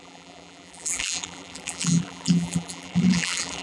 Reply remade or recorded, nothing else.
remade